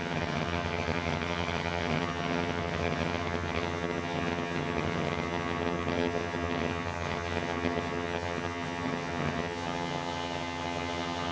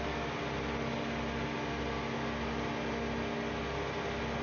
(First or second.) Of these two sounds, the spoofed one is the first